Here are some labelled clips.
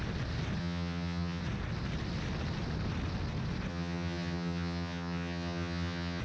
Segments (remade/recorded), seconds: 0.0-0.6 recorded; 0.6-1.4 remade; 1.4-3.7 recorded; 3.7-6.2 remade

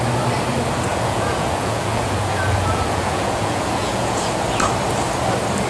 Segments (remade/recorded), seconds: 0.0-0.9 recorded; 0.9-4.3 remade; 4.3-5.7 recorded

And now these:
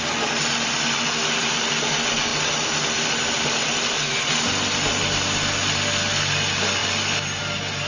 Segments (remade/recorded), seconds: 0.0-7.9 recorded

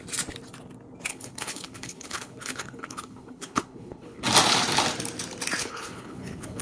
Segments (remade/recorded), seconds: 0.0-1.1 recorded; 1.1-4.2 remade; 4.2-5.6 recorded; 5.6-6.6 remade